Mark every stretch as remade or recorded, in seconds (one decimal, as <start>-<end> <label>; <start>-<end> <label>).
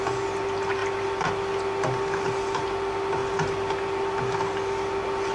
0.0-5.3 recorded